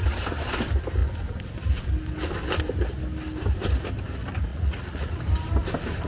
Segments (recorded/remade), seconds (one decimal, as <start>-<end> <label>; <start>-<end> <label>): 0.0-4.5 recorded; 4.5-5.2 remade; 5.2-6.1 recorded